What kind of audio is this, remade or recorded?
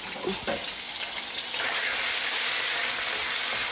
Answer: recorded